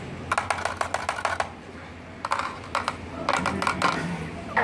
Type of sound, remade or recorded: recorded